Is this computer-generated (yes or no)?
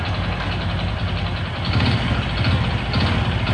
no